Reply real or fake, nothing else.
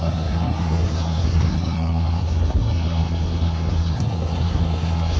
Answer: fake